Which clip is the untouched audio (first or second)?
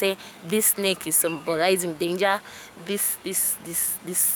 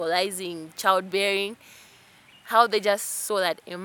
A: second